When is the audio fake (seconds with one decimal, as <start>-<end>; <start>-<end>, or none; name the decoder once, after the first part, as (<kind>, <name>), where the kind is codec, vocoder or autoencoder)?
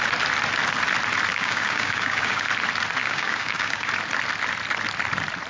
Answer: 1.3-2.5 (codec, DAC); 3.0-3.9